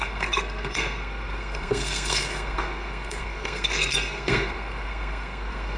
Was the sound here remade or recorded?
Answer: remade